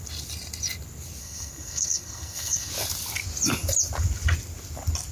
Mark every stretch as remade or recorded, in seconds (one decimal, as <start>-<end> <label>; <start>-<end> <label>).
0.0-1.2 recorded; 1.2-2.7 remade; 2.7-5.1 recorded